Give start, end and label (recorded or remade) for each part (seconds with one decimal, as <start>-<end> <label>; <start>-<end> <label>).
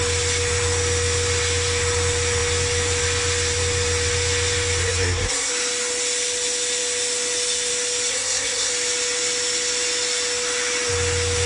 0.0-4.8 recorded; 4.8-5.5 remade; 5.5-8.1 recorded; 8.1-8.7 remade; 8.7-11.5 recorded